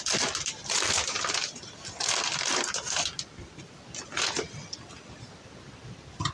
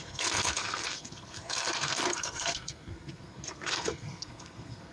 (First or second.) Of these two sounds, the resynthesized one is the second